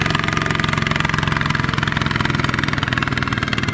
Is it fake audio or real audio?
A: real